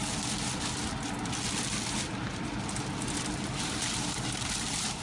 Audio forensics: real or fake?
real